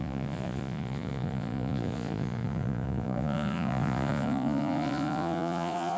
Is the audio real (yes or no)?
no